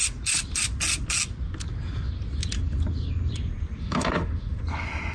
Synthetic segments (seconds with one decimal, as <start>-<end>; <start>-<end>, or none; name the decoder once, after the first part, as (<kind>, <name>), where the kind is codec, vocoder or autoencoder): 3.8-4.6 (autoencoder, DAC-VAE)